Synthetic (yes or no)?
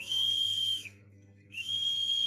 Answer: yes